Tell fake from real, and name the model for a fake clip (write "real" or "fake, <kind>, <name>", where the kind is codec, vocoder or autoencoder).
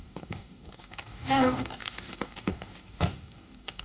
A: fake, codec, DAC